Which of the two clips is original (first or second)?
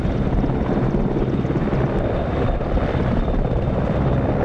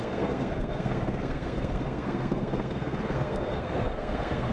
first